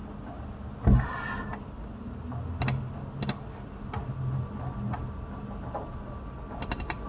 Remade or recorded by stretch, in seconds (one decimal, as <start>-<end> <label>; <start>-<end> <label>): 0.0-7.1 recorded